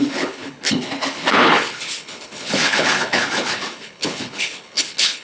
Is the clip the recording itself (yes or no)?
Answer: no